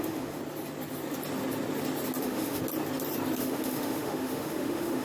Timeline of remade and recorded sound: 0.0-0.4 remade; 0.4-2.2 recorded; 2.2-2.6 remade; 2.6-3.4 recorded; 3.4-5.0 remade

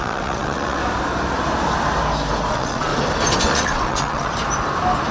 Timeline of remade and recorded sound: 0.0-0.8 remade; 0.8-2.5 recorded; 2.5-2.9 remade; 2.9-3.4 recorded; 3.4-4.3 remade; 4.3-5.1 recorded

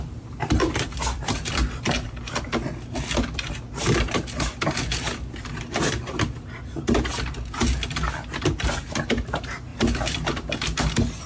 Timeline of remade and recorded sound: 0.0-0.6 recorded; 0.6-1.8 remade; 1.8-9.7 recorded; 9.7-10.8 remade; 10.8-11.3 recorded

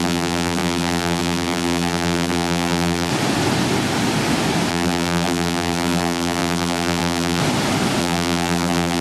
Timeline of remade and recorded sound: 0.0-3.1 remade; 3.1-4.7 recorded; 4.7-7.4 remade; 7.4-8.0 recorded; 8.0-9.0 remade

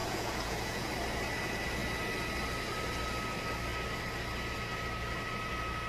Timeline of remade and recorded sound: 0.0-0.9 remade; 0.9-5.9 recorded

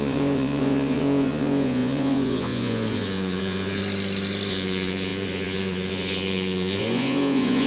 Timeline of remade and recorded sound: 0.0-3.8 remade; 3.8-4.5 recorded; 4.5-7.7 remade